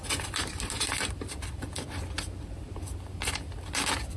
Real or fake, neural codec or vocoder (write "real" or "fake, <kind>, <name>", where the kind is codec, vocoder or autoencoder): real